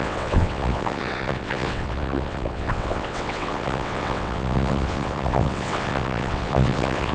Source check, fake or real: fake